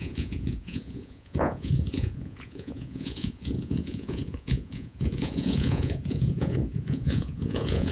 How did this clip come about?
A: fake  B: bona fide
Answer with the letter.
A